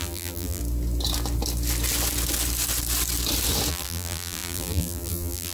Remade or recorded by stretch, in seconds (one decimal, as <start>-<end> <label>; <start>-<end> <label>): 0.0-0.6 remade; 0.6-3.7 recorded; 3.7-5.5 remade